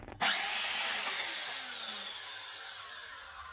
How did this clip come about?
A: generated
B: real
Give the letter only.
B